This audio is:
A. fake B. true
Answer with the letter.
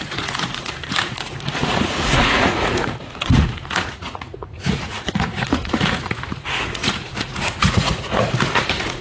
A